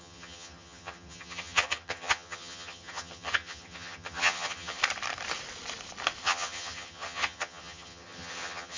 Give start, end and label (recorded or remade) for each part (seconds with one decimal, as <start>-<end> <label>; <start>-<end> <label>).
0.0-4.8 remade; 4.8-6.2 recorded; 6.2-8.8 remade